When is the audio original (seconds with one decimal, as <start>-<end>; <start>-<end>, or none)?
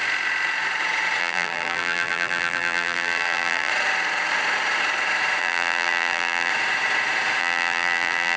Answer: 0.0-1.2; 3.7-5.4; 6.5-7.4